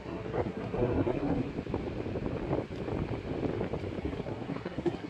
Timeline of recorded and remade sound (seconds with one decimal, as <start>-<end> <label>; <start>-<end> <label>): 0.0-1.5 remade; 1.5-4.0 recorded; 4.0-5.1 remade